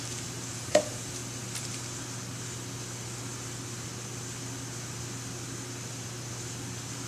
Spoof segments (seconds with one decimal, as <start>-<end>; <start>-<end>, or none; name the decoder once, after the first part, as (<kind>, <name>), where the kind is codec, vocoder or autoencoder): none